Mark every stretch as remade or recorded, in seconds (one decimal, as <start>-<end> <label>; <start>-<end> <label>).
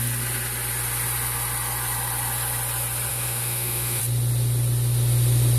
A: 0.0-3.1 recorded; 3.1-4.0 remade; 4.0-5.6 recorded